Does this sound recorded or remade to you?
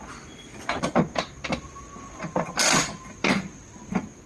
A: recorded